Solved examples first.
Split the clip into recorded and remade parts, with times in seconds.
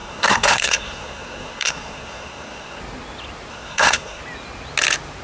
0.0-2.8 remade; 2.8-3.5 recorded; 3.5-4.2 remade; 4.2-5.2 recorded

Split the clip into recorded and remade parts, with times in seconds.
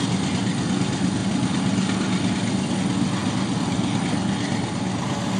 0.0-5.4 recorded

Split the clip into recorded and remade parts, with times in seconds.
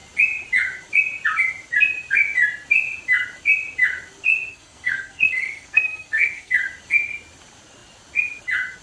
0.0-4.5 recorded; 4.5-6.6 remade; 6.6-8.8 recorded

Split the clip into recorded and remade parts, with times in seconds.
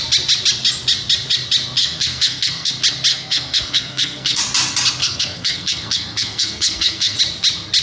0.0-1.8 recorded; 1.8-2.7 remade; 2.7-3.1 recorded; 3.1-4.4 remade; 4.4-5.0 recorded; 5.0-7.2 remade; 7.2-7.8 recorded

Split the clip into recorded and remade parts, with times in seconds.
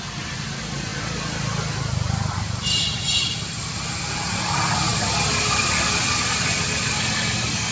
0.0-7.7 recorded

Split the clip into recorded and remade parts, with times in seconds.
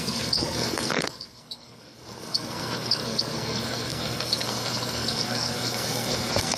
0.0-6.6 remade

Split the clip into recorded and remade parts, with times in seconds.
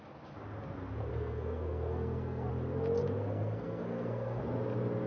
0.0-1.1 recorded; 1.1-2.5 remade; 2.5-3.0 recorded; 3.0-4.4 remade; 4.4-5.1 recorded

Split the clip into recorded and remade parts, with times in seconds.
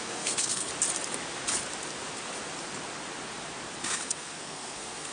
0.0-0.7 remade; 0.7-3.8 recorded; 3.8-5.1 remade